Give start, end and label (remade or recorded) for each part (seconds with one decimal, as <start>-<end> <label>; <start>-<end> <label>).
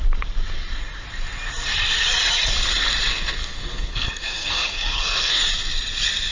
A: 0.0-3.1 recorded; 3.1-5.4 remade; 5.4-6.3 recorded